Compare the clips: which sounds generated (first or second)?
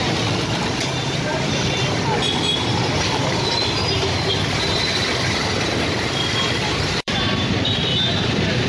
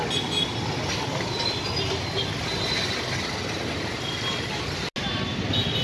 first